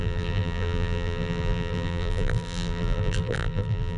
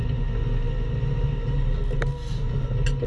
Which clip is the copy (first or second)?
first